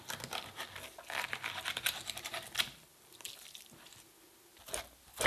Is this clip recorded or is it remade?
recorded